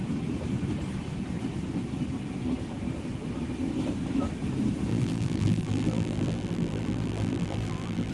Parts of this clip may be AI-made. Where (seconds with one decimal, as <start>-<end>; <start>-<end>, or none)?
4.9-8.1